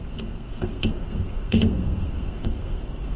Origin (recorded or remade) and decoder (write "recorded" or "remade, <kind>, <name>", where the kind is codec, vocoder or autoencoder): remade, codec, SNAC